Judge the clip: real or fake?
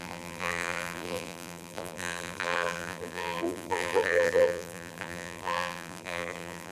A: fake